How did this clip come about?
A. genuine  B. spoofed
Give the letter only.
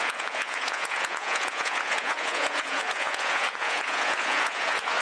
B